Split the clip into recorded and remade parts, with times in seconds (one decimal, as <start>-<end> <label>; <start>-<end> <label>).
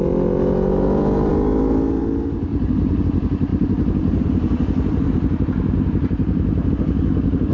0.0-2.5 recorded; 2.5-3.0 remade; 3.0-3.5 recorded; 3.5-6.7 remade; 6.7-7.5 recorded